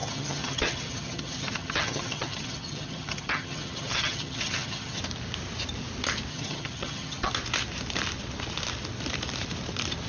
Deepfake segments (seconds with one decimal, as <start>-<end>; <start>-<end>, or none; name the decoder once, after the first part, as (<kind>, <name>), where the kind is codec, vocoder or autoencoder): 0.0-5.0 (vocoder, HiFi-GAN); 6.3-7.3

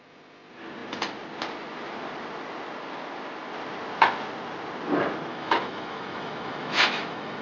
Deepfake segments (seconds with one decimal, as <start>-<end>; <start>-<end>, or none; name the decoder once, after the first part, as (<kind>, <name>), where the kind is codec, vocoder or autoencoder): 5.3-7.4 (autoencoder, DAC-VAE)

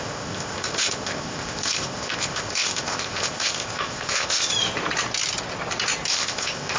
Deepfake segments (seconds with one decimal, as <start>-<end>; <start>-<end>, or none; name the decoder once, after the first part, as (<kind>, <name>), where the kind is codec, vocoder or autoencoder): 0.0-4.5 (codec, ZipCodec); 6.1-6.8

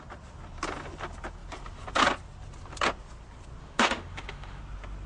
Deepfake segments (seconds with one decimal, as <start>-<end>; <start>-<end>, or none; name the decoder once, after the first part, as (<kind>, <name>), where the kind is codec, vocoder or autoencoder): 3.6-4.6 (autoencoder, DAC-VAE)